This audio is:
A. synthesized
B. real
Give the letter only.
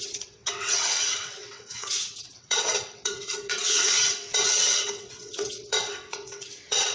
A